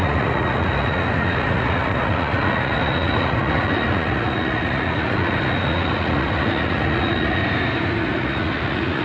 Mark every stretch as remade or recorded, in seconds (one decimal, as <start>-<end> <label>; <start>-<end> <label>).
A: 0.0-7.4 remade; 7.4-8.0 recorded; 8.0-9.0 remade